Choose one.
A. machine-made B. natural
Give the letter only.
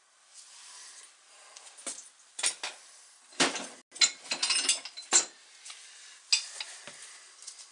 B